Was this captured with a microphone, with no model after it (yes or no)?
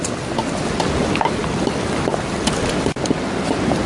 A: yes